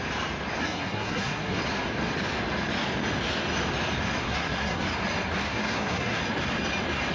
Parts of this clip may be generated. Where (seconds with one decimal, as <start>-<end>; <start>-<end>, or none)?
0.6-1.6; 4.2-4.9; 5.5-6.2